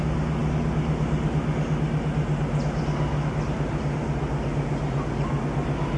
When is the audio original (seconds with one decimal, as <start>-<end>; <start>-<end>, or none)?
0.0-6.0